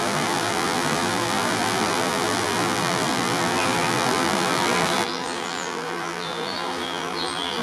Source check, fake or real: fake